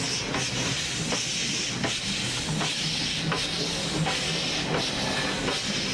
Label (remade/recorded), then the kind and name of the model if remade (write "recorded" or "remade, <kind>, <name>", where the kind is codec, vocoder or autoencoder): recorded